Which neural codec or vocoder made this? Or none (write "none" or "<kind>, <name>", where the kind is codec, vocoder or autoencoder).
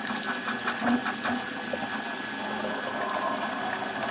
none